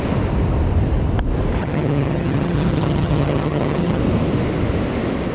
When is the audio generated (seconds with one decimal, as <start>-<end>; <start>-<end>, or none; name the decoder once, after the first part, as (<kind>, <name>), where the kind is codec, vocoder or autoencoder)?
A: 1.6-4.0 (vocoder, HiFi-GAN)